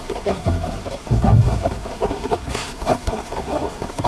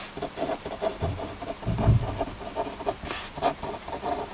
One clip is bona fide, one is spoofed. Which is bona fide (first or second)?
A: second